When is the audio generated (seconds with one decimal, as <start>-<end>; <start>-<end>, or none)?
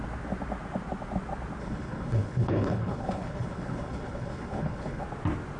1.6-5.0